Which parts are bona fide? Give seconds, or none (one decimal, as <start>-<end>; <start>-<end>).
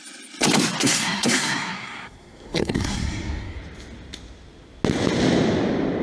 0.0-0.8; 3.6-6.0